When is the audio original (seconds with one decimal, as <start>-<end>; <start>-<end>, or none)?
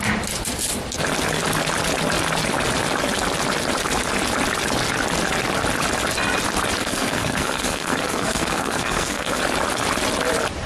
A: 0.0-6.8; 9.4-10.7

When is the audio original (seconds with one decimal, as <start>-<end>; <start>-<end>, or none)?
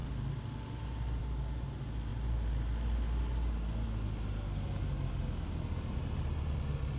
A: 0.0-7.0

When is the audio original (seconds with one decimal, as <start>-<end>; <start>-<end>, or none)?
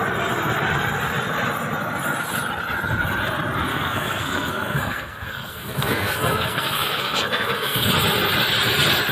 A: 0.0-3.7; 7.9-9.1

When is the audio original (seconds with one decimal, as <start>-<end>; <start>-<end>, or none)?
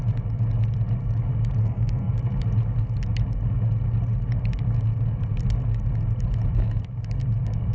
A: 0.0-1.6; 2.1-7.7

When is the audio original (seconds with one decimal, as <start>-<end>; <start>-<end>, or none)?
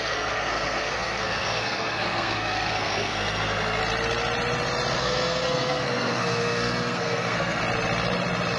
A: 3.8-5.0; 7.6-8.6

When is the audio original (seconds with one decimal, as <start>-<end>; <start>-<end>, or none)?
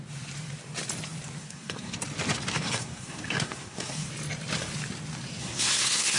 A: 0.0-1.4; 2.0-2.5; 4.1-5.4